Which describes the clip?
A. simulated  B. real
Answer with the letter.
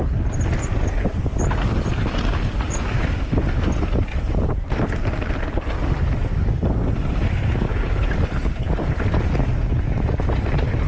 B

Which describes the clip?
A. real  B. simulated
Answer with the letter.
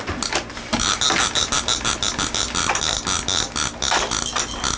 A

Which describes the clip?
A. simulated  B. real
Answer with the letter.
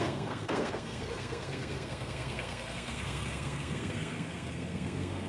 A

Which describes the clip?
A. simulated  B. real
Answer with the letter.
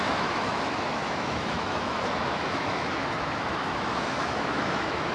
A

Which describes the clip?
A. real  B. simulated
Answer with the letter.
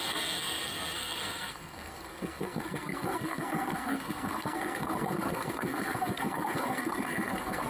B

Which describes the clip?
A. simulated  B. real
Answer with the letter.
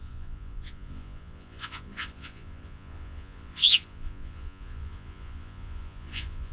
A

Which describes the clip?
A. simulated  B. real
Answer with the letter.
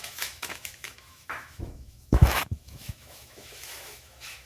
A